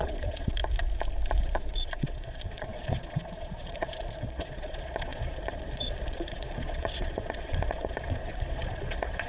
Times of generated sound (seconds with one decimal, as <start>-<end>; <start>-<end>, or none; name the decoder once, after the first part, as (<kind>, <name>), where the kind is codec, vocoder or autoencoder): 0.0-0.6 (vocoder, Vocos); 1.3-9.3